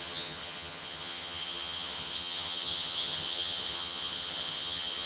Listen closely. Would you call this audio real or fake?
fake